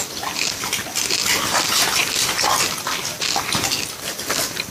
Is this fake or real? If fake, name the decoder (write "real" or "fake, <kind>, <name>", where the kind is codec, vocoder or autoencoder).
real